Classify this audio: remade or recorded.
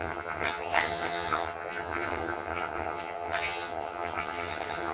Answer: remade